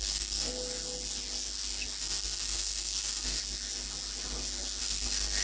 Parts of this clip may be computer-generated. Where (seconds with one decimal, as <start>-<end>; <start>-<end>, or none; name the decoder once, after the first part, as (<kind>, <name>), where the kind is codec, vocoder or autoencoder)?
0.0-0.5 (codec, SNAC); 2.0-3.4; 4.8-5.4

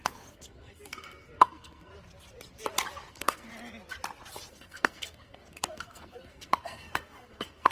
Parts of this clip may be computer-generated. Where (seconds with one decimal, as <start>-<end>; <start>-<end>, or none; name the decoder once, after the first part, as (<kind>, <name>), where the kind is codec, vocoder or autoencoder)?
0.0-1.9 (codec, SNAC); 3.1-3.5; 4.5-7.7

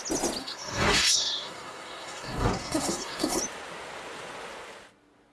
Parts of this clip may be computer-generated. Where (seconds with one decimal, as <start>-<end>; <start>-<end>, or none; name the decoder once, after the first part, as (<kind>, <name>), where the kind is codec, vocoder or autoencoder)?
0.4-3.4 (codec, SNAC)